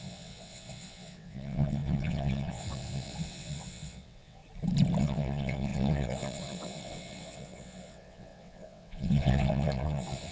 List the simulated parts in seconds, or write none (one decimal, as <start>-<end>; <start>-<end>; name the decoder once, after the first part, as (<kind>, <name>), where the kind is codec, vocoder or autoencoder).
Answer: 0.0-4.4 (vocoder, WaveNeXt); 5.0-10.3